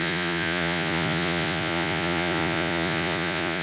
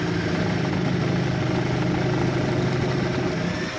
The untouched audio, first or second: second